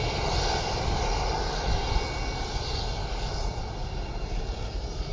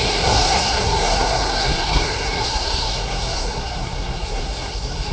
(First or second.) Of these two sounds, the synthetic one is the second